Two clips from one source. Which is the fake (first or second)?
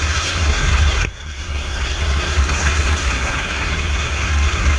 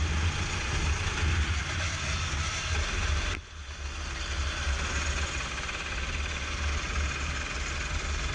first